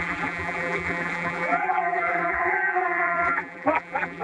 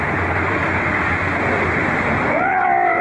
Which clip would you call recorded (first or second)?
second